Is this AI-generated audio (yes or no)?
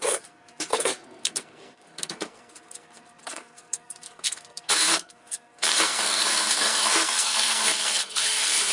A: yes